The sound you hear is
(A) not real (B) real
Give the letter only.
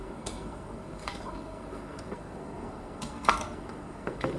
A